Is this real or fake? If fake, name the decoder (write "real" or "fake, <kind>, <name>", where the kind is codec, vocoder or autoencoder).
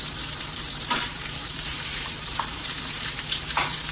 fake, vocoder, BigVGAN v2